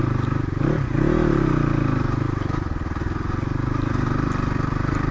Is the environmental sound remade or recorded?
recorded